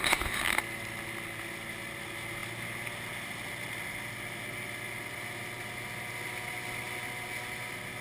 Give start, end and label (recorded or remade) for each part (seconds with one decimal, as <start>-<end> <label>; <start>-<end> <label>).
0.0-0.6 remade; 0.6-8.0 recorded